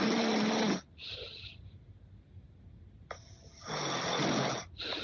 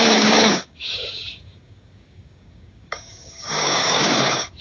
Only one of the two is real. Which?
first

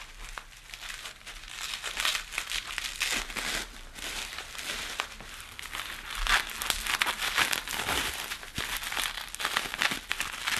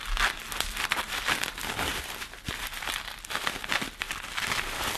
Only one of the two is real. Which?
first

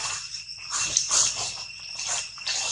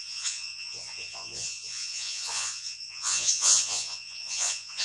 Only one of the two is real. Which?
first